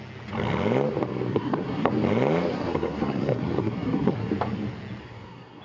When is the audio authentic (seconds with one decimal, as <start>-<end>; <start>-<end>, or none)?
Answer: 0.0-1.3; 1.9-2.5; 4.3-5.0